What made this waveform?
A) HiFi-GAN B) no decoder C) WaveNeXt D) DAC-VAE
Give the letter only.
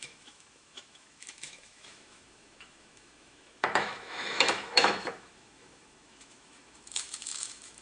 D